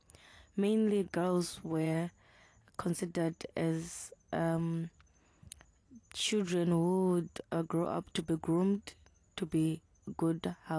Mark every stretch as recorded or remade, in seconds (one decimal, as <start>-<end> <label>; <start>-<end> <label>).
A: 0.0-1.5 recorded; 1.5-2.6 remade; 2.6-10.8 recorded